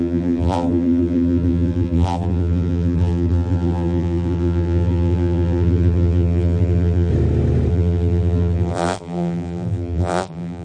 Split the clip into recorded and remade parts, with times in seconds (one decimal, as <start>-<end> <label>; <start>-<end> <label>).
0.0-7.1 remade; 7.1-7.7 recorded; 7.7-10.6 remade